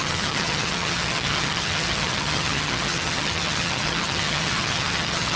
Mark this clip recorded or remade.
remade